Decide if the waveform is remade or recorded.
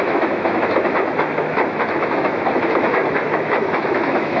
remade